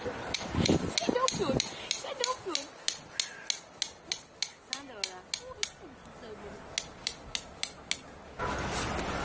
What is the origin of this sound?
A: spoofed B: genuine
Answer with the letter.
B